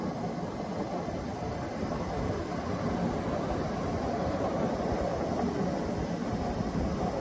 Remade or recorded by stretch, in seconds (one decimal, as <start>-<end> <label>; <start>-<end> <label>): 0.0-1.3 recorded; 1.3-2.0 remade; 2.0-7.2 recorded